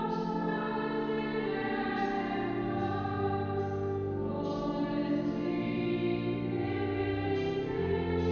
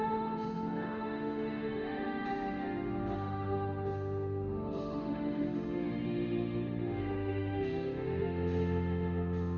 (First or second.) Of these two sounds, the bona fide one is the first